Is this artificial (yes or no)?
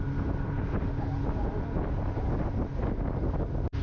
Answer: no